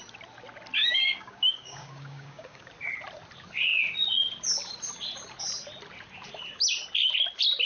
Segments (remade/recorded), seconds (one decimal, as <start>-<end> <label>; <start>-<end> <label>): 0.0-0.8 recorded; 0.8-2.7 remade; 2.7-7.7 recorded